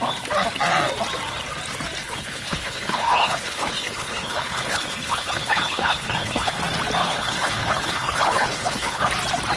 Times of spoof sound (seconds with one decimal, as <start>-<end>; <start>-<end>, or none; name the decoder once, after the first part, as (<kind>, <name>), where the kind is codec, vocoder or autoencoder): 2.0-6.6 (codec, HILCodec); 7.0-9.1